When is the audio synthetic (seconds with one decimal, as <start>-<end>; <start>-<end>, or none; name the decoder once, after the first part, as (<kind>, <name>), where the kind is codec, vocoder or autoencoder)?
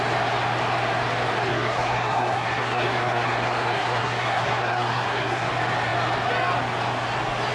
1.5-5.5 (codec, SNAC)